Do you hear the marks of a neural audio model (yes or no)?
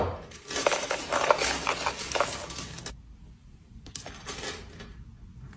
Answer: no